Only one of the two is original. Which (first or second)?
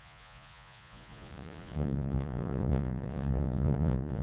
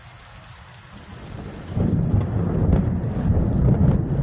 second